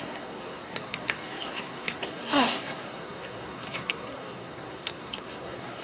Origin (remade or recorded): remade